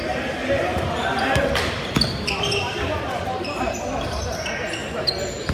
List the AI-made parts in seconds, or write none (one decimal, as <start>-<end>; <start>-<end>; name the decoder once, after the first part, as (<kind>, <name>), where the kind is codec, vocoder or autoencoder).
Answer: none